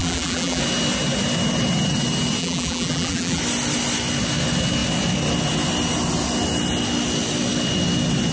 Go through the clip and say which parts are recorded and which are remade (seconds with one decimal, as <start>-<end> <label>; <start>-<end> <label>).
0.0-0.6 remade; 0.6-2.4 recorded; 2.4-3.4 remade; 3.4-8.3 recorded